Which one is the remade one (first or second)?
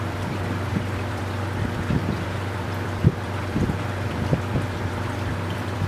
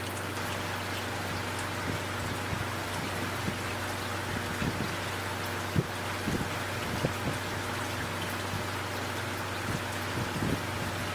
first